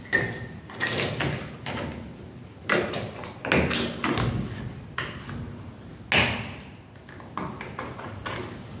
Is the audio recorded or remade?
recorded